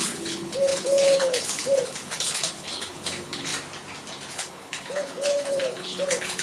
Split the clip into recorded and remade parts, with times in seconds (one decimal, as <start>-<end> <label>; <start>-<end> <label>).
0.0-3.5 remade; 3.5-4.3 recorded; 4.3-6.4 remade